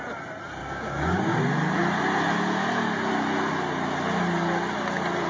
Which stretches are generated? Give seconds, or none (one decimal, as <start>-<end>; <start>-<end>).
0.6-1.4